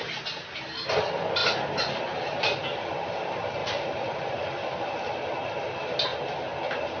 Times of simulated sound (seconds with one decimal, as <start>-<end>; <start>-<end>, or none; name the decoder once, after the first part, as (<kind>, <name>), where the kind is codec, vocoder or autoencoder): 1.4-2.0 (vocoder, BigVGAN v2); 3.6-4.9